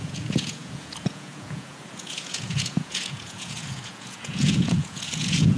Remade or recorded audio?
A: remade